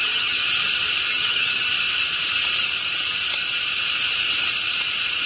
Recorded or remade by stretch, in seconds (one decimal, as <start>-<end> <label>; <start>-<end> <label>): 0.0-0.4 remade; 0.4-1.1 recorded; 1.1-1.7 remade; 1.7-5.3 recorded